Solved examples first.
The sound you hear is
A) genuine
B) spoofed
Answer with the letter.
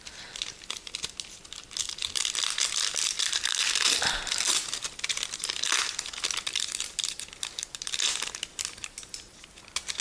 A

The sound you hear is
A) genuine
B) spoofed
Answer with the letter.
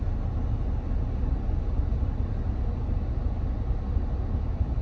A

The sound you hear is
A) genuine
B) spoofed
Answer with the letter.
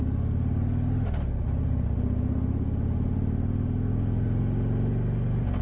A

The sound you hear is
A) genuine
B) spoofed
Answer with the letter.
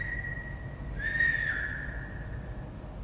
A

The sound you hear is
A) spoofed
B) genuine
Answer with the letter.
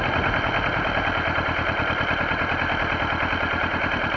B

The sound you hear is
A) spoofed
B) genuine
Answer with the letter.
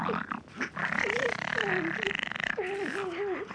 B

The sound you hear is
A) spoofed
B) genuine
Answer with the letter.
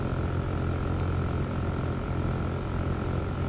B